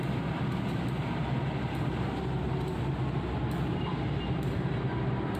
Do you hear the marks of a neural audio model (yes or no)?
no